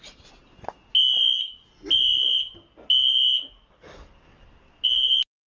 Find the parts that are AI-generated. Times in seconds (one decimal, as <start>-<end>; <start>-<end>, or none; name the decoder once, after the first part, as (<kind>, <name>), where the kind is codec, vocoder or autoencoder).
none